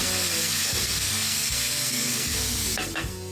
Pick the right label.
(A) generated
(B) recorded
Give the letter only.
A